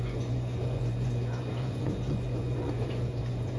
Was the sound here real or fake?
fake